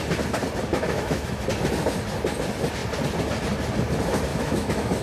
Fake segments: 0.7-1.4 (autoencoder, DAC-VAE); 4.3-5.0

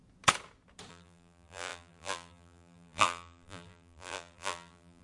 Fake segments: 0.9-5.0 (vocoder, BigVGAN v2)

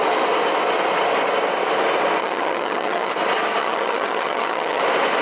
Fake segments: 2.2-3.1 (vocoder, HiFi-GAN); 3.6-4.8